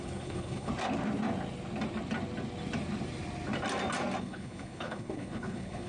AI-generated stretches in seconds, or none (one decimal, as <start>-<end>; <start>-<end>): 0.0-0.7; 4.2-5.9